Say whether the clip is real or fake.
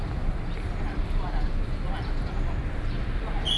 real